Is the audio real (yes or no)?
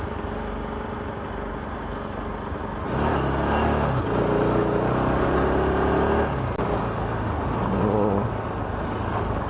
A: yes